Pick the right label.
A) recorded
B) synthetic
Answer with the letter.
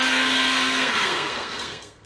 B